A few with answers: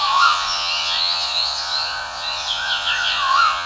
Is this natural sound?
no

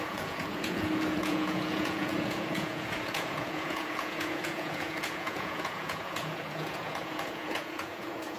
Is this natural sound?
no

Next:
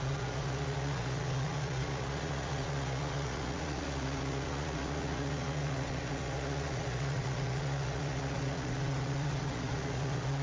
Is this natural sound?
no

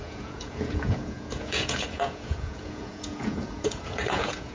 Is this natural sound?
no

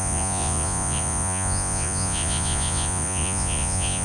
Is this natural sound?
no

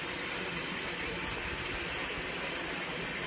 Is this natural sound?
yes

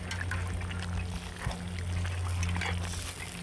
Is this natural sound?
yes